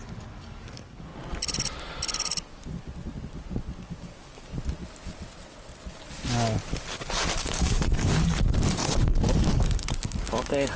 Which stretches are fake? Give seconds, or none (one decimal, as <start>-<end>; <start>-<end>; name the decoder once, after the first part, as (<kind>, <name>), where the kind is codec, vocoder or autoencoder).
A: 0.0-1.1 (codec, DAC); 3.6-4.5; 7.4-8.8; 9.4-10.8